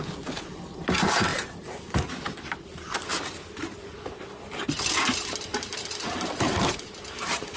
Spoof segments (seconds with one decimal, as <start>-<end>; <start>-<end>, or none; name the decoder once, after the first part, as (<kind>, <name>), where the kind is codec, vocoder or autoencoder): 1.3-2.1 (vocoder, BigVGAN v2); 5.5-7.0